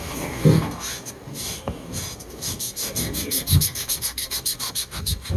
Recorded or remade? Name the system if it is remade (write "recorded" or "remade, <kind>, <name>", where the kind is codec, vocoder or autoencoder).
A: remade, codec, DAC